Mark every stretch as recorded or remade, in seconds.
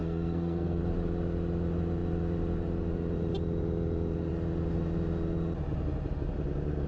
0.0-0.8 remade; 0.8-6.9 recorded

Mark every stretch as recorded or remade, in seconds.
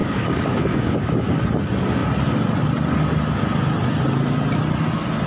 0.0-1.4 remade; 1.4-5.3 recorded